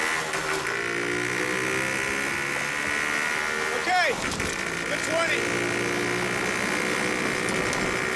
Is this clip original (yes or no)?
yes